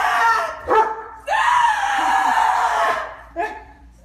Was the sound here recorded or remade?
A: remade